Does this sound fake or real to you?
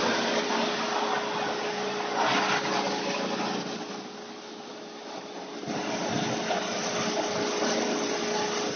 real